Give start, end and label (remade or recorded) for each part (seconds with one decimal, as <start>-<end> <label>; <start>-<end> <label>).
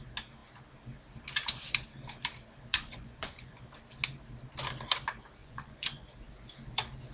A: 0.0-2.7 recorded; 2.7-3.6 remade; 3.6-5.4 recorded; 5.4-6.1 remade; 6.1-7.1 recorded